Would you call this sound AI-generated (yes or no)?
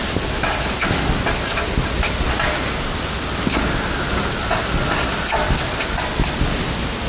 no